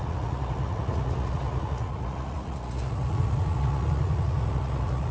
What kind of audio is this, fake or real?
fake